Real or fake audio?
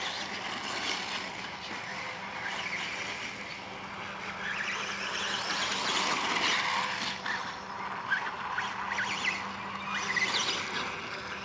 real